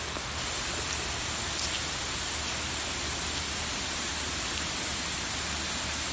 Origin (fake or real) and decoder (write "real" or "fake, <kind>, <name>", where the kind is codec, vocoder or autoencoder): real